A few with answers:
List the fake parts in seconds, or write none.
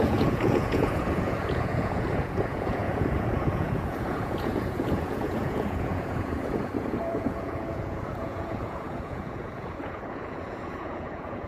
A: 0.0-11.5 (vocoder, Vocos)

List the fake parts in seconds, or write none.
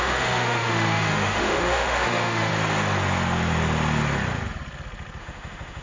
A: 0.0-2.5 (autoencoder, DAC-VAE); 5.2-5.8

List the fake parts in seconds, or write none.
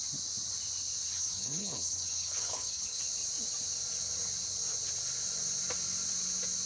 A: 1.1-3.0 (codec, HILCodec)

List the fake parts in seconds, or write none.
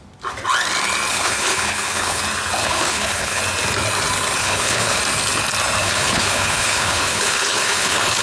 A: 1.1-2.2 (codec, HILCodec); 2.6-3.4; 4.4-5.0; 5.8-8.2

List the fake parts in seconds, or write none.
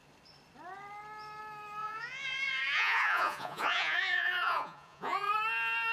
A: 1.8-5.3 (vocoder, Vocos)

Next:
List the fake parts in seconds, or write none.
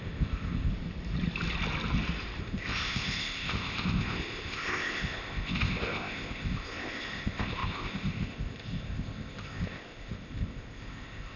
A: 0.0-0.7 (codec, ZipCodec); 2.4-11.4